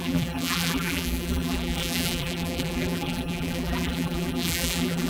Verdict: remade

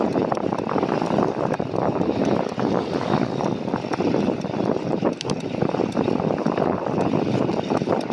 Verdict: recorded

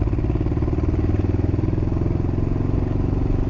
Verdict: recorded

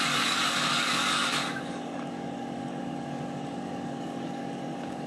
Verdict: remade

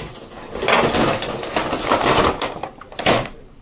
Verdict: recorded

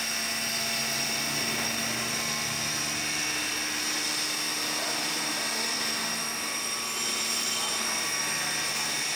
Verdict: recorded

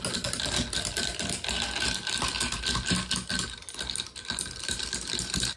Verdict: recorded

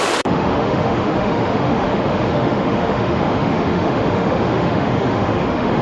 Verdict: remade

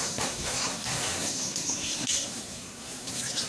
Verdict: remade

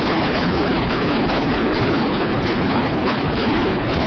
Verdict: remade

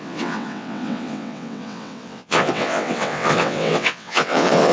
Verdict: remade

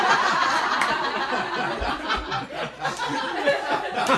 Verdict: remade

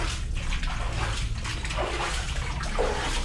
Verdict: recorded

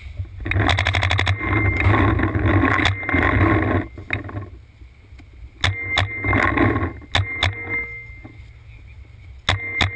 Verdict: recorded